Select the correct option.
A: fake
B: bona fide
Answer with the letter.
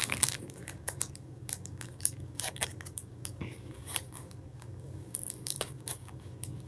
A